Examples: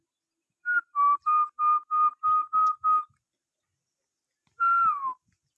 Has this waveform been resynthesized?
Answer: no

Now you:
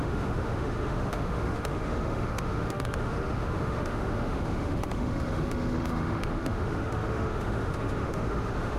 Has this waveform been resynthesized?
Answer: yes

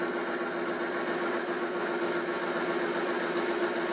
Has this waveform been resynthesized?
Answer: no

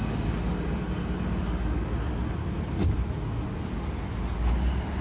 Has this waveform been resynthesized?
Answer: no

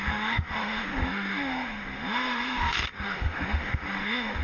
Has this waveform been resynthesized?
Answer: yes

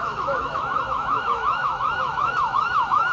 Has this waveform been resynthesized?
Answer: yes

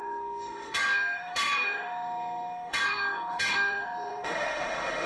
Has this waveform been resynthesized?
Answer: yes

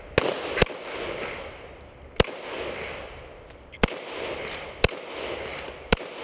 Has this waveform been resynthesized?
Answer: no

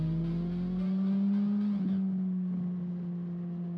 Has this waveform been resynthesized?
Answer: no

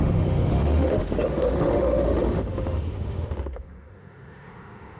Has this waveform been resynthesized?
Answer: yes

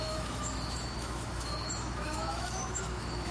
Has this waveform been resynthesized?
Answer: yes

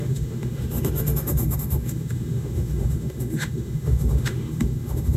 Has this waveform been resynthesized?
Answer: yes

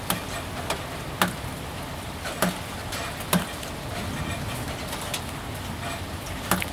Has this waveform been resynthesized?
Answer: no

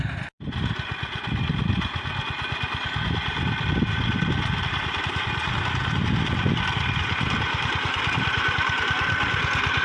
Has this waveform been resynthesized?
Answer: no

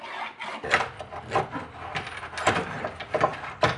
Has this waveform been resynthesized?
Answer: no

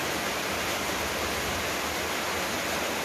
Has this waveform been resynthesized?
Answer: no